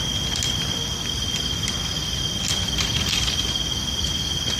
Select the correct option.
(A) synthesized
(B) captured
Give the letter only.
B